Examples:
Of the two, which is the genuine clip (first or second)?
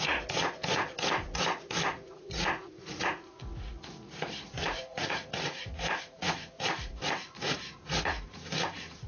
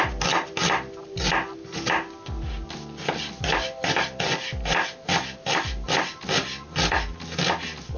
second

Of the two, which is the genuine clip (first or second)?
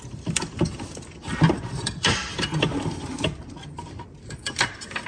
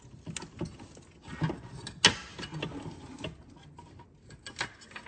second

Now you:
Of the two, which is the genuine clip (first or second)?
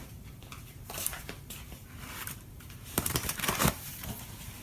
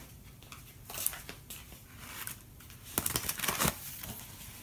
second